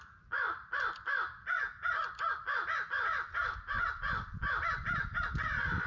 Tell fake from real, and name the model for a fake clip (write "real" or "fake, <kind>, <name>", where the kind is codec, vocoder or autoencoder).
real